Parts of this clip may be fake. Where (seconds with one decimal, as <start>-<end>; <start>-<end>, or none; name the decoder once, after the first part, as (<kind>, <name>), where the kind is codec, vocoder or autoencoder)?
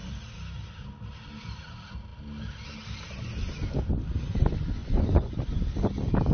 4.8-5.3 (vocoder, Vocos)